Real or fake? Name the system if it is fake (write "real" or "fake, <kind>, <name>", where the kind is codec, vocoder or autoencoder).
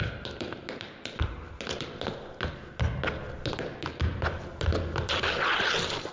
real